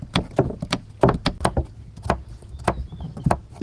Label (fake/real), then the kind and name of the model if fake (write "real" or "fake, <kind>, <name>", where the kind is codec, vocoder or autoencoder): real